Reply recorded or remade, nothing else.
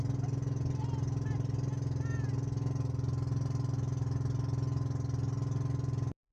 recorded